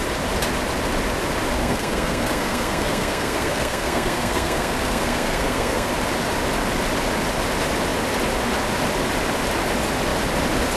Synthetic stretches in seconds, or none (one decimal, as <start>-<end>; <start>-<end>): 1.6-5.9